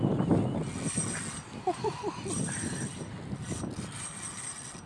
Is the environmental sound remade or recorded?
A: recorded